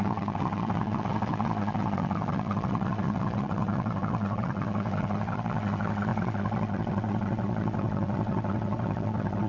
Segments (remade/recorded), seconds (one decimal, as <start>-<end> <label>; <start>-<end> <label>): 0.0-9.5 remade